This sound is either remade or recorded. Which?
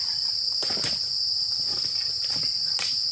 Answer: recorded